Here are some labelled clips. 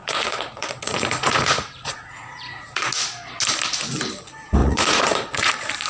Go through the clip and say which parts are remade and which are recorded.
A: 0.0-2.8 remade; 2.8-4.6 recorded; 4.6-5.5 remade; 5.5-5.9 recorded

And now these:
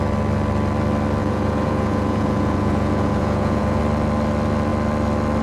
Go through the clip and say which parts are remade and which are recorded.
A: 0.0-1.2 recorded; 1.2-3.8 remade; 3.8-5.4 recorded

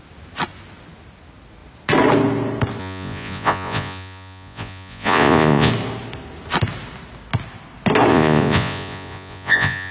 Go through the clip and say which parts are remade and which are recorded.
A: 0.0-2.8 recorded; 2.8-5.7 remade; 5.7-8.1 recorded; 8.1-9.9 remade

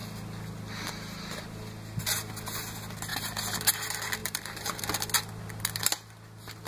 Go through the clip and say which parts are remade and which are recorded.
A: 0.0-4.2 recorded; 4.2-4.8 remade; 4.8-6.7 recorded

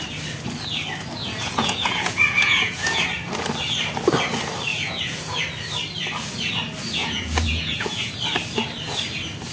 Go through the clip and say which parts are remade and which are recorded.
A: 0.0-1.2 recorded; 1.2-3.0 remade; 3.0-4.7 recorded; 4.7-5.4 remade; 5.4-7.0 recorded; 7.0-8.1 remade; 8.1-9.5 recorded

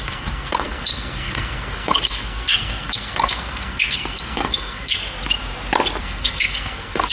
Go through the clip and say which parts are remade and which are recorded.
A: 0.0-5.0 remade; 5.0-6.0 recorded; 6.0-7.1 remade